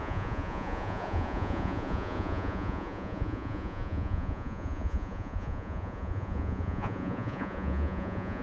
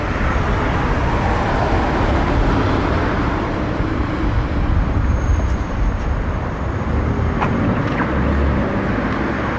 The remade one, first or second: first